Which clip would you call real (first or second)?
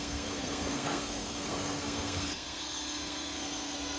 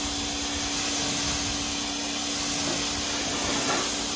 second